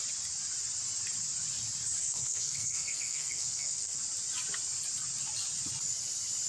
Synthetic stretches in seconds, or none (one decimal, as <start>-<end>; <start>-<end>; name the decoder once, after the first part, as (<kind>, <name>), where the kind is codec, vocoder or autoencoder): 2.0-4.0 (codec, SNAC)